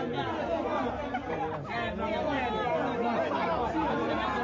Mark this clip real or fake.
real